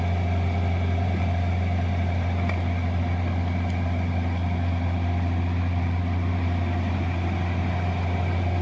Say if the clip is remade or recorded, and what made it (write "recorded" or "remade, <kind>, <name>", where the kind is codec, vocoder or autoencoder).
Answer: recorded